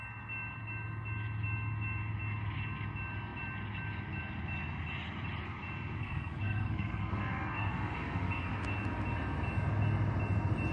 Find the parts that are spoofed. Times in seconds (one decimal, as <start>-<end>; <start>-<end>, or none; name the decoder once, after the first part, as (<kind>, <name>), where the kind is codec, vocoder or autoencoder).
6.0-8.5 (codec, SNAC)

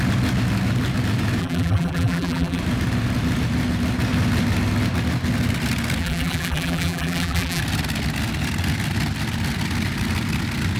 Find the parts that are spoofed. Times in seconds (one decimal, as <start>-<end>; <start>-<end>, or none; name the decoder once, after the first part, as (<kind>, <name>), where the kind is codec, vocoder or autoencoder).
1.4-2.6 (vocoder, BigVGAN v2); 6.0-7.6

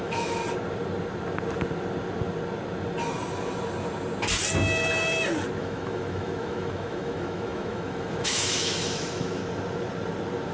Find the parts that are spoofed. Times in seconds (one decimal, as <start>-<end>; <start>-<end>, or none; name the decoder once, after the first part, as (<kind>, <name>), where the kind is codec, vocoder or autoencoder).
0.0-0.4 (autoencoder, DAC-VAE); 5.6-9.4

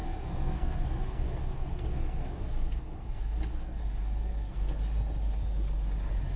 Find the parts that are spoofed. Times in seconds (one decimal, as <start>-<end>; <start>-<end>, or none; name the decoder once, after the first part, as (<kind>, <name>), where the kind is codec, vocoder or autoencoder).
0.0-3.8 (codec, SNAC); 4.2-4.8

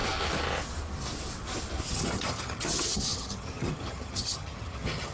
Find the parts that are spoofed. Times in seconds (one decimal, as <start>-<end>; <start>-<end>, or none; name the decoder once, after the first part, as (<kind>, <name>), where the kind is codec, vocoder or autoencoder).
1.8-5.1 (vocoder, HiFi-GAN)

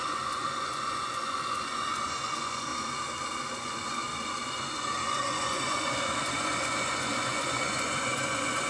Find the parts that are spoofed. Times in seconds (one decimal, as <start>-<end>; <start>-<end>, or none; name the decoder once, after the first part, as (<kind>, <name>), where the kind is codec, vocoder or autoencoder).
0.0-2.7 (vocoder, Vocos); 3.5-8.7